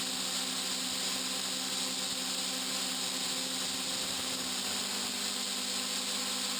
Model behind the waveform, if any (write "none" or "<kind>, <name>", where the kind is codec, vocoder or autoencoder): none